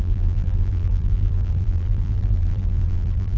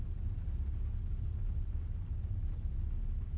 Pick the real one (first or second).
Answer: second